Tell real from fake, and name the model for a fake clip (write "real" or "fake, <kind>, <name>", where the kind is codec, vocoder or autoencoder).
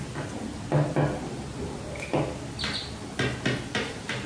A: real